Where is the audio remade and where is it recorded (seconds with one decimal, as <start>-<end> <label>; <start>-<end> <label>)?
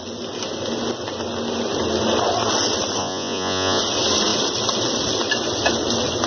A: 0.0-3.0 recorded; 3.0-3.8 remade; 3.8-6.3 recorded